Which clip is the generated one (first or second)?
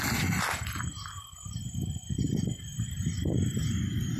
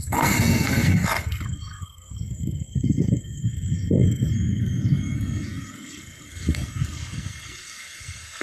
second